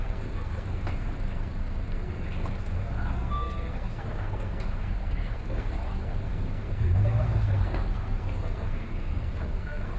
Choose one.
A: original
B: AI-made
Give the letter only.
B